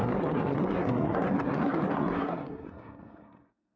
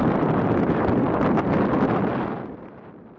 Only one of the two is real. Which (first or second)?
second